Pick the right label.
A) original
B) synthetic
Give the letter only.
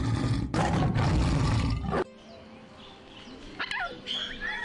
A